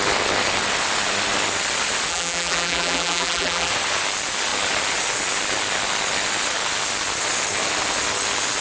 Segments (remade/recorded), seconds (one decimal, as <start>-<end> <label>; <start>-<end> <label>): 0.0-2.1 recorded; 2.1-3.7 remade; 3.7-8.6 recorded